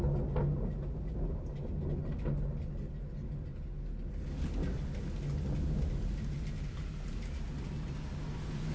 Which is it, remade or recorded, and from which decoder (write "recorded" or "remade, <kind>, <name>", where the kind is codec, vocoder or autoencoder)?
recorded